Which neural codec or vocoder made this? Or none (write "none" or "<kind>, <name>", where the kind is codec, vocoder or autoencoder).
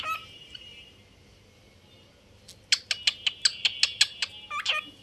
none